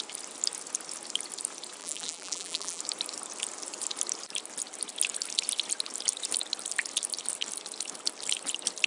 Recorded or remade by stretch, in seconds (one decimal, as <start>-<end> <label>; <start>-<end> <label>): 0.0-1.8 recorded; 1.8-2.8 remade; 2.8-8.9 recorded